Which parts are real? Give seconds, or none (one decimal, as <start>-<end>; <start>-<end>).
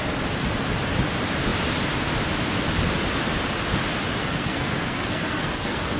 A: 0.0-4.2